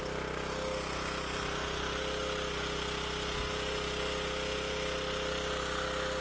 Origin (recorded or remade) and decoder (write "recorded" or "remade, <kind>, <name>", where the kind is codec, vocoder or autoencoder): recorded